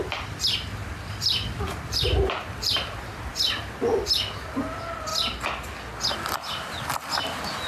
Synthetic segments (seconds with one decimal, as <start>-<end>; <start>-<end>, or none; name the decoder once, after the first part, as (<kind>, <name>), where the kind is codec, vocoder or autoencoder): 0.0-5.1 (vocoder, BigVGAN v2); 7.1-7.7